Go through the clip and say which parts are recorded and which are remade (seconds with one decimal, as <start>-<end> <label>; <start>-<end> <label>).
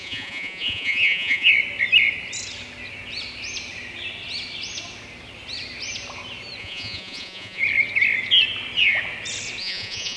0.0-1.5 remade; 1.5-6.6 recorded; 6.6-7.6 remade; 7.6-9.6 recorded; 9.6-10.2 remade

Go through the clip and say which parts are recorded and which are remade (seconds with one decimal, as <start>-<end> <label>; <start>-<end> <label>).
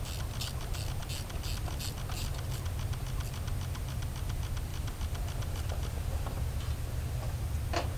0.0-4.7 recorded; 4.7-7.4 remade; 7.4-8.0 recorded